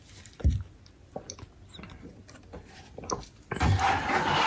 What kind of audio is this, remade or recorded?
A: remade